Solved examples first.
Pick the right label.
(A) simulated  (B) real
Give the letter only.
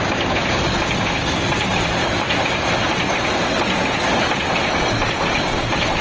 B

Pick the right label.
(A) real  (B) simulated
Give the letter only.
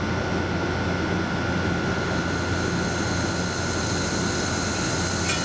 A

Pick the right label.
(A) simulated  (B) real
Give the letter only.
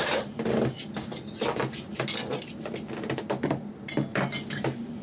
B